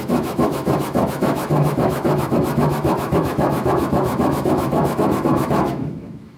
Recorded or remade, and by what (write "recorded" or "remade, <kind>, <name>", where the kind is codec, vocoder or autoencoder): remade, autoencoder, DAC-VAE